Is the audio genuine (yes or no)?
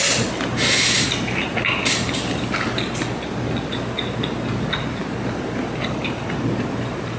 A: yes